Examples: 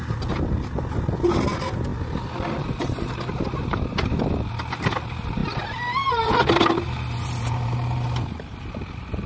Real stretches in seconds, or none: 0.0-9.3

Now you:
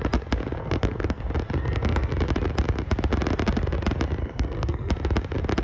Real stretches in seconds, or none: 0.0-0.6; 1.2-1.6; 2.1-4.2; 4.9-5.6

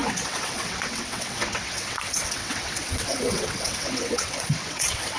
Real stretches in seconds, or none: none